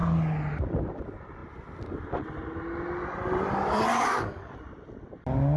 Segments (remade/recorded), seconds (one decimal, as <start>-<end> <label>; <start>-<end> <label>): 0.0-3.9 recorded; 3.9-4.5 remade; 4.5-5.6 recorded